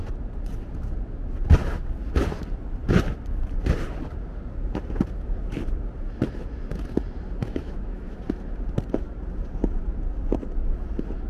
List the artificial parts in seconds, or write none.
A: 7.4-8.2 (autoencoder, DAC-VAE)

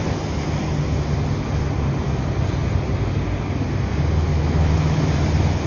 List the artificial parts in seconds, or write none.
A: 4.3-5.0 (autoencoder, DAC-VAE)

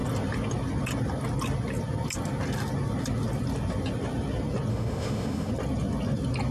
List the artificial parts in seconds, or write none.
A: 4.7-5.5 (autoencoder, DAC-VAE)

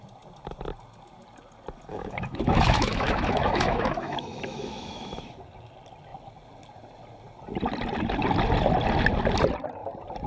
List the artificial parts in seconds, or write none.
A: 1.9-5.2 (autoencoder, DAC-VAE)

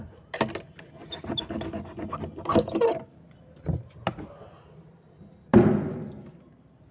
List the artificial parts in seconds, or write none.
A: none

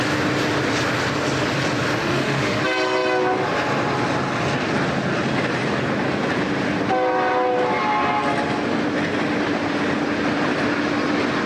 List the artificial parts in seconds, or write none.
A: 2.0-2.6 (autoencoder, DAC-VAE)